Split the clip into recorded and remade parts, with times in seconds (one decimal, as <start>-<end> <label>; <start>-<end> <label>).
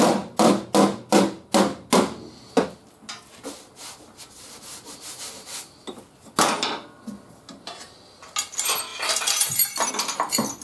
0.0-10.6 recorded